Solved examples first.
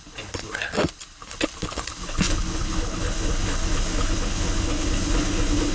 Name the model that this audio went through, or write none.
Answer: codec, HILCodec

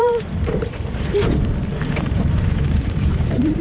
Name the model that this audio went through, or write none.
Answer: vocoder, BigVGAN v2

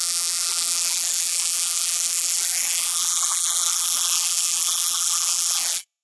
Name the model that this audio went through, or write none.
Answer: vocoder, BigVGAN v2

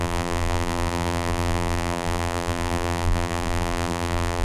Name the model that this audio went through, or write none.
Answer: vocoder, BigVGAN v2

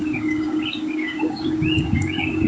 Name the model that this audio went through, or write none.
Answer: codec, DAC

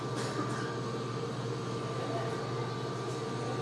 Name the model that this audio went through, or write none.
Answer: none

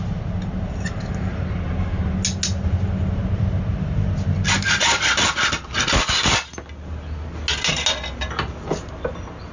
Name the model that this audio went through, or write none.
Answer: none